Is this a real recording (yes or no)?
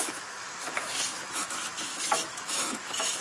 no